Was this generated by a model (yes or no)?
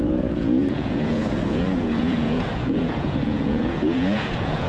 yes